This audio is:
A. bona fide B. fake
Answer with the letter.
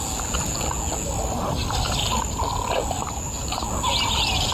A